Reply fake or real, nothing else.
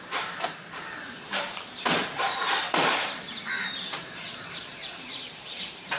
fake